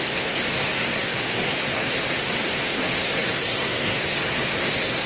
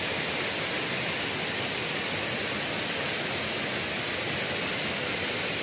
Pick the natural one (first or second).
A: second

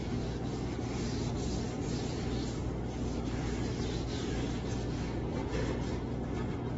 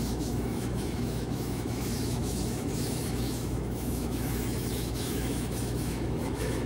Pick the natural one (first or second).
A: first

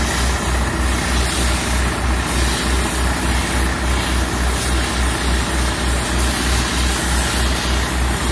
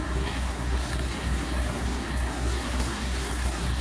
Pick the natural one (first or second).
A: first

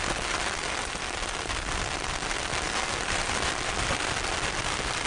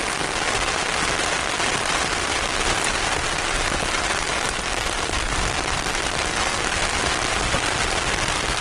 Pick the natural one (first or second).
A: second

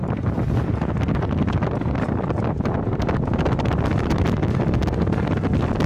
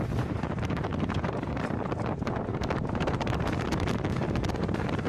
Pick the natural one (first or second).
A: first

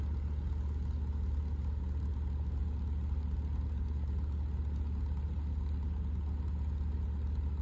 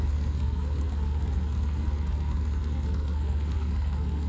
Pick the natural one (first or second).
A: first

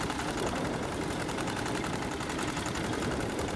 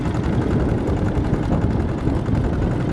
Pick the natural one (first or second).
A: second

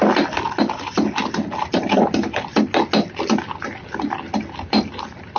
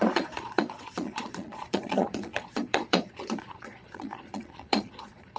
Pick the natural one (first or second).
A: first